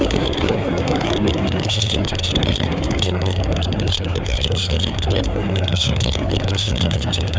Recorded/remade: remade